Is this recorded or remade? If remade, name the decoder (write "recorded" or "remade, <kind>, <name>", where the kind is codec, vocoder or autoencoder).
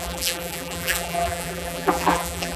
remade, vocoder, BigVGAN v2